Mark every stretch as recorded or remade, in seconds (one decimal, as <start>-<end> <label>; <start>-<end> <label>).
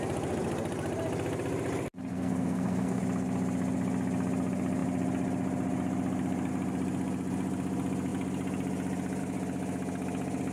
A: 0.0-2.1 recorded; 2.1-3.0 remade; 3.0-10.5 recorded